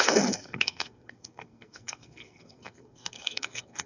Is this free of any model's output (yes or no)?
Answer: no